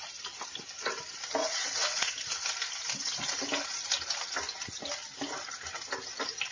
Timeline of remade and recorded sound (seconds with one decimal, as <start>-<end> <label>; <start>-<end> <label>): 0.0-1.4 recorded; 1.4-2.1 remade; 2.1-6.5 recorded